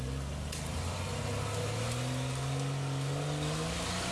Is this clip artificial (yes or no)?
no